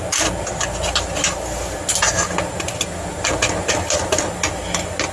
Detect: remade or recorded recorded